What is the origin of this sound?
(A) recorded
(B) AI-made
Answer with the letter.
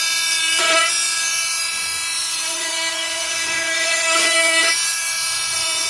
B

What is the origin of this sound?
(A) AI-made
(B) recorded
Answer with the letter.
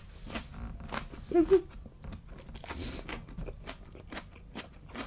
B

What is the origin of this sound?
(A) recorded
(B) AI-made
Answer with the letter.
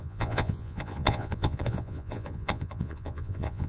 B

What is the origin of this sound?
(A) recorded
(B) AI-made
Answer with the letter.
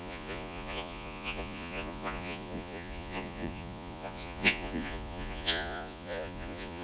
B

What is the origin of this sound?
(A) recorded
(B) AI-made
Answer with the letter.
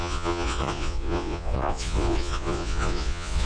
B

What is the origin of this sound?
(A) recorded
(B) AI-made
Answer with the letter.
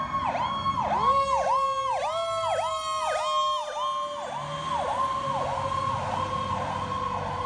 A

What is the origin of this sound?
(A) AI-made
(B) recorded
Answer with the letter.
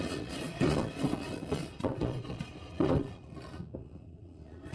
A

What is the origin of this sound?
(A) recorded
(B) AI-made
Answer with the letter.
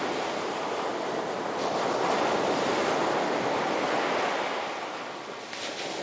A